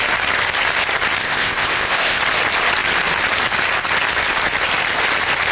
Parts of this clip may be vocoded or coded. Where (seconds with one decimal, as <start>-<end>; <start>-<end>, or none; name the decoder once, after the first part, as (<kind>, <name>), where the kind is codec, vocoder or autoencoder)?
1.2-2.2 (codec, ZipCodec)